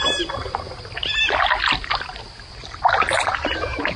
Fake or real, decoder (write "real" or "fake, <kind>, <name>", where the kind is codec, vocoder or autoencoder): real